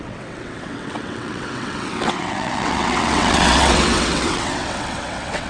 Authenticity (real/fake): fake